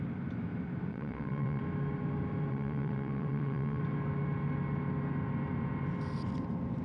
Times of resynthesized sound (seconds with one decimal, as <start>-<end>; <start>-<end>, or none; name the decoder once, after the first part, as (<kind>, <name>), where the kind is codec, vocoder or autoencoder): 0.9-1.6 (vocoder, WaveNeXt); 2.5-3.8